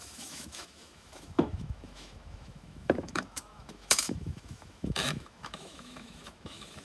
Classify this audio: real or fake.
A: fake